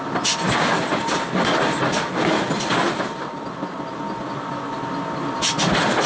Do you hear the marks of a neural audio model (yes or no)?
no